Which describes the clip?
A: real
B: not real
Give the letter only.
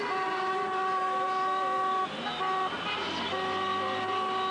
A